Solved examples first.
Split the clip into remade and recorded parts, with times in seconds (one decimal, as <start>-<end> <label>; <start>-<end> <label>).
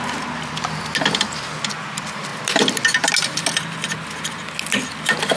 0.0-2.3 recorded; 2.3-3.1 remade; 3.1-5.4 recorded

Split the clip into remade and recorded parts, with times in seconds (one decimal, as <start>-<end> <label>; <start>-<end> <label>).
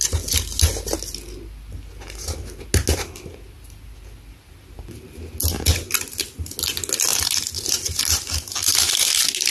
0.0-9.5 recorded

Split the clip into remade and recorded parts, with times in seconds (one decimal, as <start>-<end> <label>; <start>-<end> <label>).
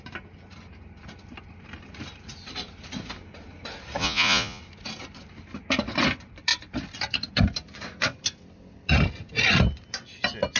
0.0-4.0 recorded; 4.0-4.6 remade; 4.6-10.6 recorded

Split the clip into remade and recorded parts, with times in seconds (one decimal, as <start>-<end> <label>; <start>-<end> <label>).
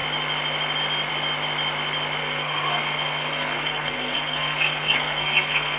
0.0-2.2 recorded; 2.2-5.8 remade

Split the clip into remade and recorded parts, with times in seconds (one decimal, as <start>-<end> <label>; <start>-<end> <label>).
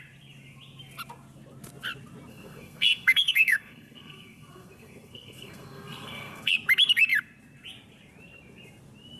0.0-2.3 recorded; 2.3-6.5 remade; 6.5-9.2 recorded